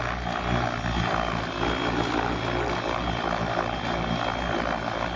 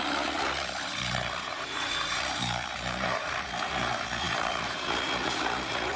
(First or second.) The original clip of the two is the first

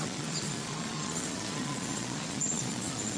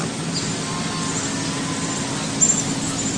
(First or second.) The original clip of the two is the second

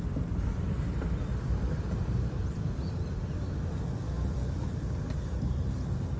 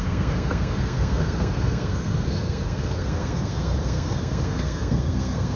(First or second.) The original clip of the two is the first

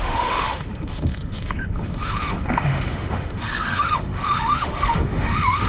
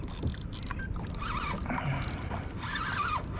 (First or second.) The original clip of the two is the second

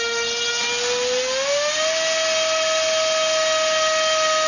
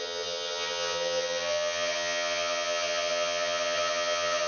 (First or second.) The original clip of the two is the first